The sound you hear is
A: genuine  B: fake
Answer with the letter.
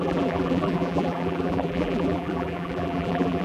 B